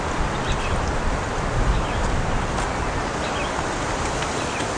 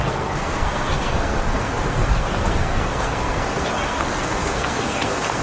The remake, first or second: second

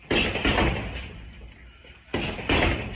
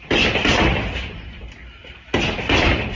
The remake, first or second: second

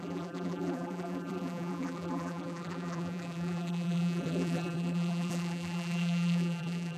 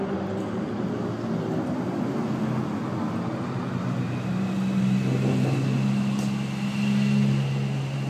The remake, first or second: first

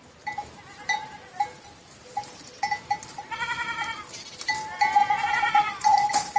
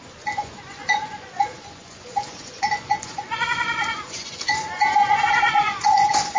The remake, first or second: second